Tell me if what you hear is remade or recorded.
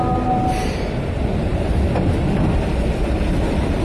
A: recorded